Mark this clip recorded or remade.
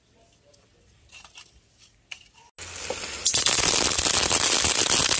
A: recorded